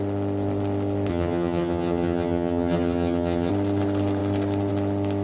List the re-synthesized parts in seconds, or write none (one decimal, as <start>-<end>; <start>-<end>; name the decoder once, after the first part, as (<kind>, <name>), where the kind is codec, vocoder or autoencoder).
1.1-3.5 (vocoder, HiFi-GAN)